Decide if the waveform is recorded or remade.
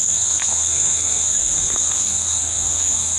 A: remade